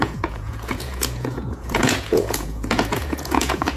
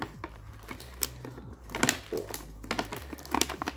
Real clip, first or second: second